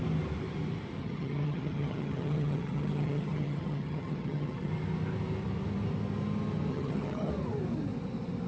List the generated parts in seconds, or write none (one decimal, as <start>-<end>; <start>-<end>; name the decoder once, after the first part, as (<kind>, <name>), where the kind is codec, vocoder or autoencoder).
1.0-4.7 (vocoder, HiFi-GAN); 6.7-7.3